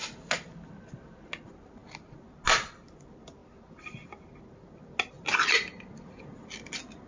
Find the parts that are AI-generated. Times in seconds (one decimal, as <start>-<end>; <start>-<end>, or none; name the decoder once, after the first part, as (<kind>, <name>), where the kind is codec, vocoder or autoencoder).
0.7-1.8 (vocoder, BigVGAN v2); 2.7-3.4; 6.2-7.1